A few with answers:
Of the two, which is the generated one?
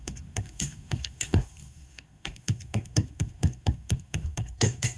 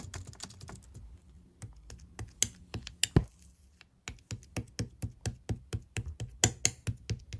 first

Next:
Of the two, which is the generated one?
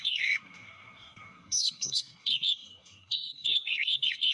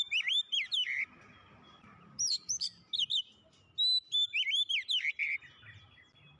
first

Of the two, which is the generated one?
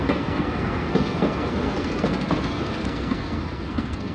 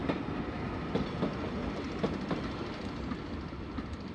first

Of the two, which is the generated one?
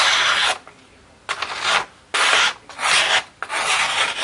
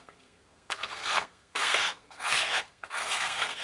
second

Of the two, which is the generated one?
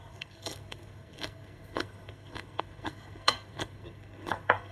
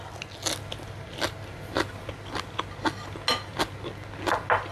first